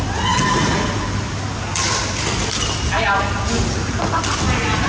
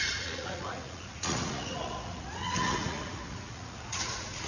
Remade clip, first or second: second